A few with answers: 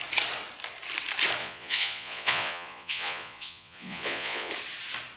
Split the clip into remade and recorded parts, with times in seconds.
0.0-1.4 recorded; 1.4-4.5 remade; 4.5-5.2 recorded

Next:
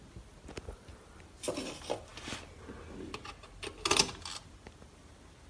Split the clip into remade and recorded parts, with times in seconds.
0.0-5.5 recorded